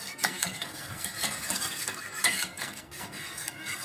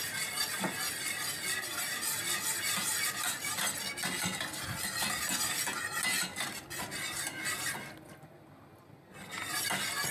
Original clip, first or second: second